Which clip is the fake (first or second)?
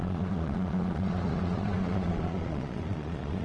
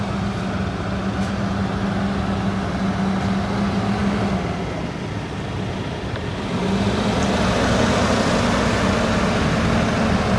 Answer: first